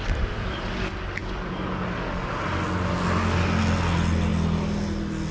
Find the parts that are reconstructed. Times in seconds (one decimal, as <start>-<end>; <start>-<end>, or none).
none